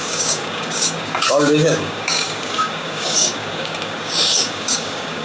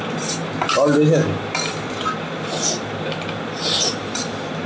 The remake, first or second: first